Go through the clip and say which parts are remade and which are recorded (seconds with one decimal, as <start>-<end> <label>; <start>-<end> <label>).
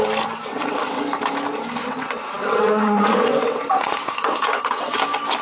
0.0-0.5 recorded; 0.5-1.2 remade; 1.2-1.8 recorded; 1.8-5.0 remade; 5.0-5.4 recorded